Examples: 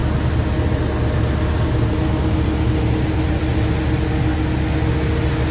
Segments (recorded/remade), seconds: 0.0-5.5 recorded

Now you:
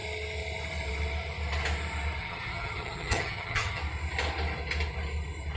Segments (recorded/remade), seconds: 0.0-2.2 recorded; 2.2-3.8 remade; 3.8-5.6 recorded

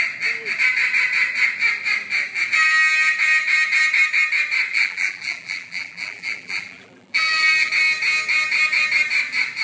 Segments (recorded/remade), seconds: 0.0-4.7 recorded; 4.7-7.7 remade; 7.7-9.6 recorded

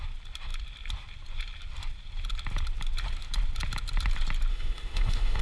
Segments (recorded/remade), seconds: 0.0-4.5 recorded; 4.5-5.4 remade

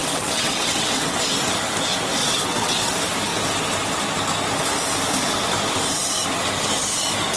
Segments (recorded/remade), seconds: 0.0-1.2 remade; 1.2-2.2 recorded; 2.2-2.9 remade; 2.9-7.4 recorded

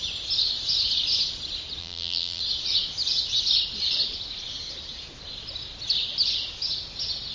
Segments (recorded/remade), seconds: 0.0-1.8 recorded; 1.8-2.4 remade; 2.4-7.3 recorded